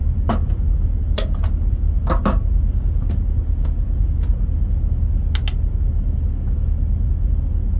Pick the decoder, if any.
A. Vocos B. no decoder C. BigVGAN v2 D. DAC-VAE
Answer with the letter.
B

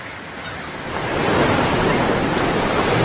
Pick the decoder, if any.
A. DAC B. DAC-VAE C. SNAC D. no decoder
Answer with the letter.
D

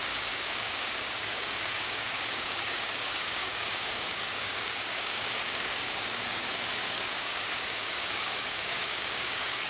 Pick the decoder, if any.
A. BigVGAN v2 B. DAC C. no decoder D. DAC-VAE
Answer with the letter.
B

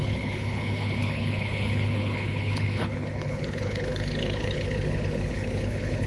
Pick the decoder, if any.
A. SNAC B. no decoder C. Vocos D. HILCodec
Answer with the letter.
D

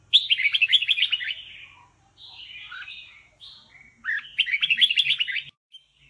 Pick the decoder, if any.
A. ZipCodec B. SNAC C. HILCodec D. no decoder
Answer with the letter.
D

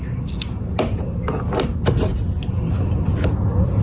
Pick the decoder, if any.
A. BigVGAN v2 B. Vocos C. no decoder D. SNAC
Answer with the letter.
C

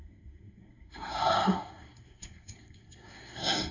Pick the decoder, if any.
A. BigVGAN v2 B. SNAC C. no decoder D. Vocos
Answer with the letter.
B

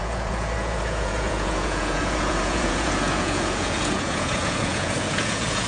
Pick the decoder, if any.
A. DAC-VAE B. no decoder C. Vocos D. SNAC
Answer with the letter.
C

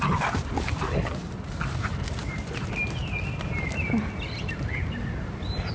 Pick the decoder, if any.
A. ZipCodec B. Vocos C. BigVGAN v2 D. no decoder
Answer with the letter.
D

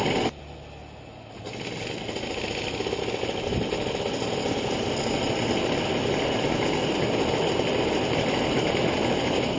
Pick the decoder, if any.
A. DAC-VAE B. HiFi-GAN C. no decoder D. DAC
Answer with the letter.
C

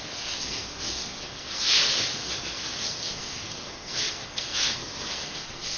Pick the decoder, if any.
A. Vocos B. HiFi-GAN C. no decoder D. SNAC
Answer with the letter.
D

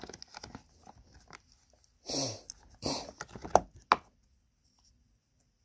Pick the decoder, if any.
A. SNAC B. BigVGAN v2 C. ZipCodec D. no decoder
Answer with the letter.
D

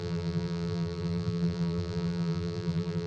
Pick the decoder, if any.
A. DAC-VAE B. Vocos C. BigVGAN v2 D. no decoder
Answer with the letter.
C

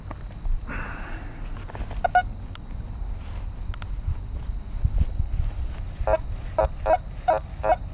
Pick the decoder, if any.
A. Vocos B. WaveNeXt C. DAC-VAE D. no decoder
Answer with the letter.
D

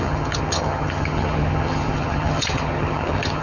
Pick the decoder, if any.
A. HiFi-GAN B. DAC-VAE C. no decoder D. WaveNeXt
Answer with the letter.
A